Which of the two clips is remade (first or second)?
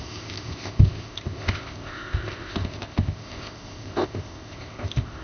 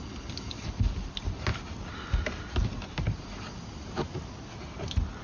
first